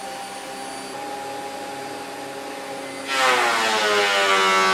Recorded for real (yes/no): yes